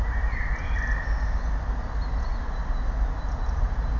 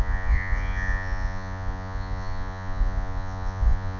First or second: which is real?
first